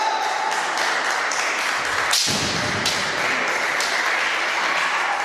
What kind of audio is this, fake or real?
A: real